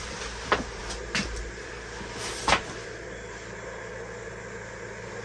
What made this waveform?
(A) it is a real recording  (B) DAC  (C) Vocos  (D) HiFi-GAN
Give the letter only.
A